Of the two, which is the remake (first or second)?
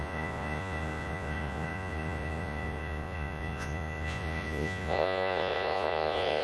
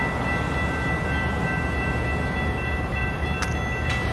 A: first